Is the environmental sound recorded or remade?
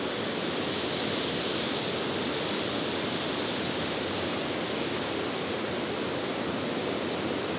recorded